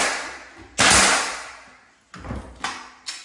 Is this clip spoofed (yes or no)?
no